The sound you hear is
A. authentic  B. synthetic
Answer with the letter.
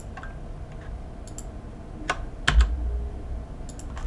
A